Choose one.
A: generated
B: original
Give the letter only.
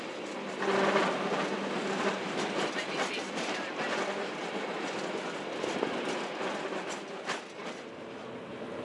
B